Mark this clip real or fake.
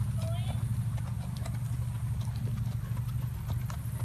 real